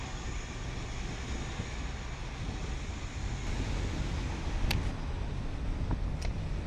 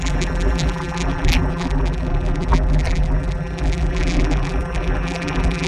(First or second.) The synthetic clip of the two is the second